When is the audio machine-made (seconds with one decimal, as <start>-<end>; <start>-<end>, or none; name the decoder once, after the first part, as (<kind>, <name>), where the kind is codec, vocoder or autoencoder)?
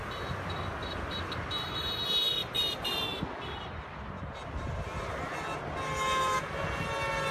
none